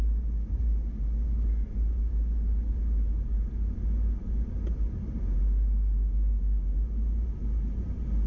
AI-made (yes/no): no